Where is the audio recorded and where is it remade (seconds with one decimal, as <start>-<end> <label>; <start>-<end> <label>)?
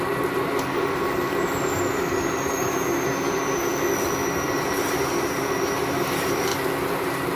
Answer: 0.0-3.7 remade; 3.7-4.3 recorded; 4.3-6.5 remade; 6.5-7.4 recorded